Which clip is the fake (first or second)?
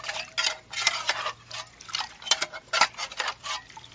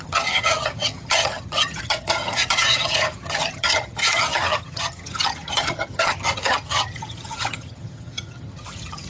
second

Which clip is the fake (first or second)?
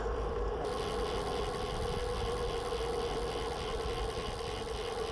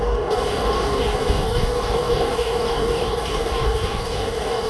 second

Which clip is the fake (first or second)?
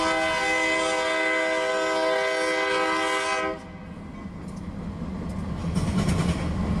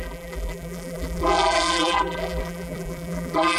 second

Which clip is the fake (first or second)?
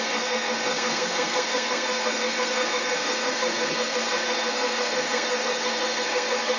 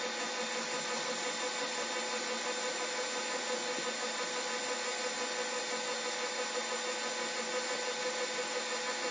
first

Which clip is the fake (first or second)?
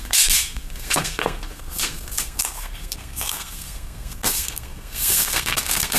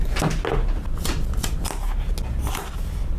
first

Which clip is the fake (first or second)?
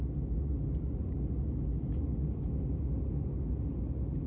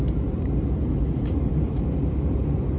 second